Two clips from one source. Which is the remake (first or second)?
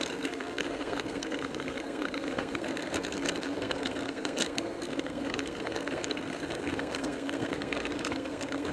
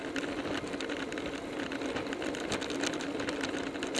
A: first